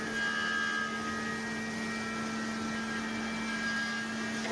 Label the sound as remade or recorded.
recorded